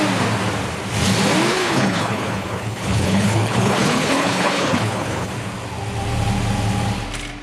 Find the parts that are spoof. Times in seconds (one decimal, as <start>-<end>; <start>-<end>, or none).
1.5-5.3